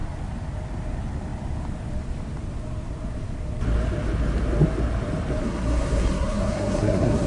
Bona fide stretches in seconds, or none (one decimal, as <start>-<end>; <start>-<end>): 0.0-5.4